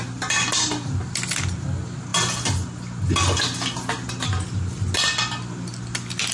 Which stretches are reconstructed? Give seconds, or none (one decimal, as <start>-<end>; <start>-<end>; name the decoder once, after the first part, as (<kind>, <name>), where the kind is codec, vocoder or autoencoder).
none